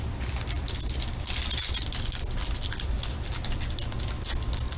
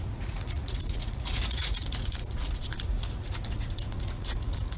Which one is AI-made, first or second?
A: second